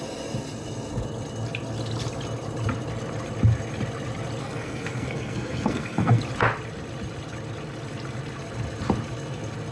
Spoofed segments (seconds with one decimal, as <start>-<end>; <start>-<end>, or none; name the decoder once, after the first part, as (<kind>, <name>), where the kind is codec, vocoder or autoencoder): 4.4-6.2 (codec, SNAC)